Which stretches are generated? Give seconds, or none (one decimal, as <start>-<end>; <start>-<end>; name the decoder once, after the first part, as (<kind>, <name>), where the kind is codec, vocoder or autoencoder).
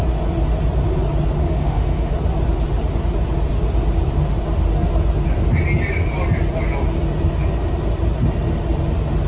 1.4-2.1 (autoencoder, DAC-VAE)